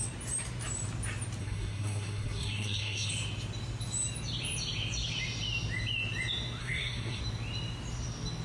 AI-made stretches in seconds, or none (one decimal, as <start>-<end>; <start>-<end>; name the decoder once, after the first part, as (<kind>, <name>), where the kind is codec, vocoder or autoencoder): 1.4-3.1 (codec, SNAC); 6.6-7.2